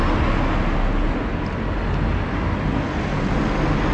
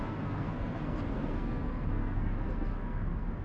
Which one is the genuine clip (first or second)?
first